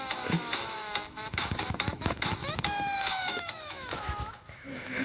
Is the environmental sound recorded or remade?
remade